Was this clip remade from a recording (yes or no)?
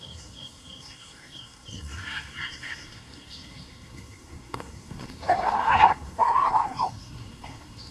yes